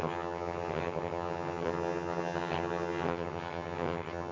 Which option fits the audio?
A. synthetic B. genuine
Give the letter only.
A